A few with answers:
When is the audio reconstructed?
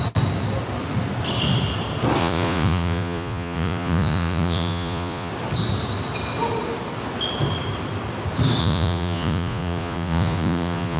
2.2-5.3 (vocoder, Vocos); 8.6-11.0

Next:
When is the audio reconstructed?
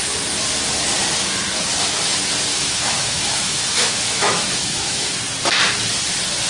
2.5-5.2 (autoencoder, DAC-VAE)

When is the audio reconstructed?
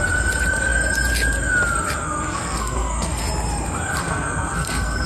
2.0-3.2 (codec, SNAC); 4.0-5.1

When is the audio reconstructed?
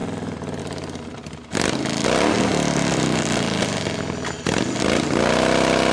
2.5-3.6 (vocoder, BigVGAN v2)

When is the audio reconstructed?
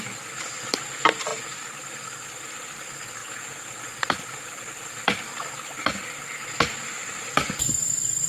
3.2-3.7 (vocoder, Vocos)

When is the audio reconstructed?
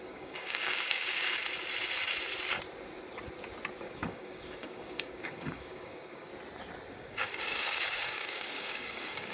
0.0-1.4 (codec, DAC); 3.8-6.3; 6.9-9.3